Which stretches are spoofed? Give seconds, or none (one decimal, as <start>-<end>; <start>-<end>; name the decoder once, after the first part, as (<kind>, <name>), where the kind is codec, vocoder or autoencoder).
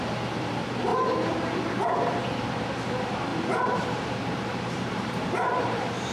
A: 3.3-6.1 (vocoder, BigVGAN v2)